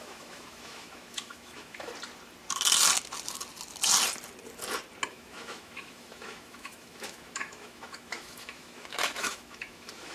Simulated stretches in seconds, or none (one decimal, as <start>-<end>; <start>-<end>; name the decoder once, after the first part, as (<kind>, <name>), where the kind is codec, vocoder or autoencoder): 0.0-1.9 (autoencoder, DAC-VAE); 5.1-10.1